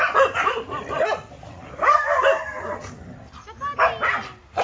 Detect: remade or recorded recorded